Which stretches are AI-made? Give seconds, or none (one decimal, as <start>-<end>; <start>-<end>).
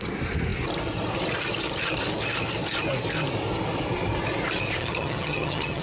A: 4.8-5.8